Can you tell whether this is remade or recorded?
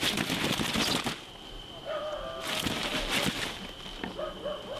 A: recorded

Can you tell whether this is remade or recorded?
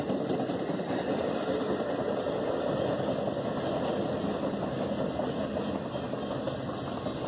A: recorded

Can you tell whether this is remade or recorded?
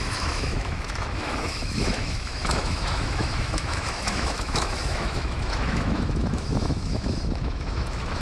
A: remade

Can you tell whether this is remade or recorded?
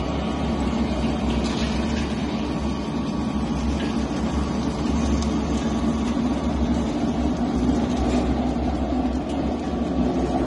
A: recorded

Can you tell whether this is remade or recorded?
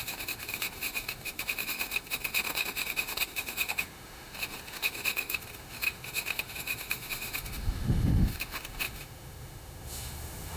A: remade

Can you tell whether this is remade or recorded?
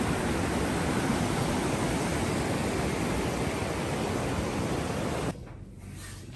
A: recorded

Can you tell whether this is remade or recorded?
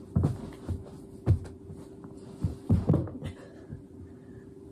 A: recorded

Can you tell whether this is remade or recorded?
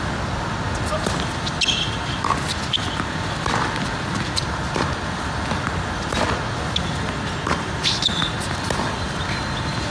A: recorded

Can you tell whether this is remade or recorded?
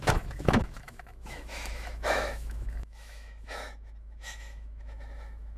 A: remade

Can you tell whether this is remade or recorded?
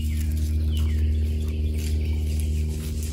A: recorded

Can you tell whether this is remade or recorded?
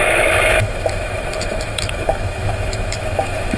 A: remade